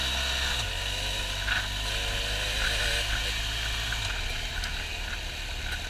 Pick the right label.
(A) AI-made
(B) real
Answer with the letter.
B